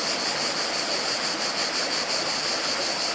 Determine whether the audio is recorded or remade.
recorded